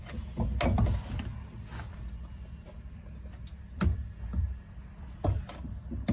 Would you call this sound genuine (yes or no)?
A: yes